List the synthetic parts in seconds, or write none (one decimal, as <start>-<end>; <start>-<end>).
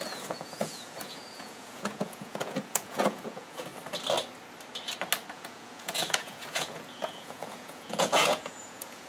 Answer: 0.0-3.7; 5.3-9.1